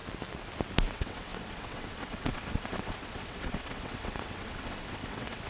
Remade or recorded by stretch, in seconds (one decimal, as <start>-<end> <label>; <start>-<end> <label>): 0.0-0.9 recorded; 0.9-5.5 remade